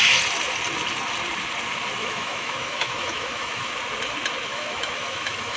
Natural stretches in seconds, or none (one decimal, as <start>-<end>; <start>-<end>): 0.0-2.0; 3.7-4.5